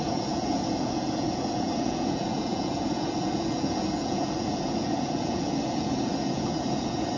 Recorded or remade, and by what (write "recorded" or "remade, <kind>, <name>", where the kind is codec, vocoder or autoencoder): remade, vocoder, Vocos